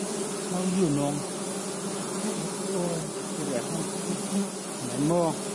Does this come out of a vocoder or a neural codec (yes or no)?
no